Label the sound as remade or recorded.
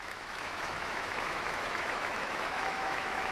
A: remade